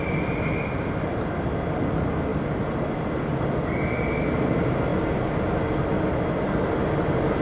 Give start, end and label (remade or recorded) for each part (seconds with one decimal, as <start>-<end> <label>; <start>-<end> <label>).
0.0-7.4 recorded